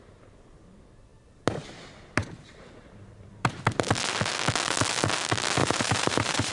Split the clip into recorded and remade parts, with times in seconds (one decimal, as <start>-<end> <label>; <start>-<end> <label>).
0.0-2.2 recorded; 2.2-3.5 remade; 3.5-5.6 recorded; 5.6-6.5 remade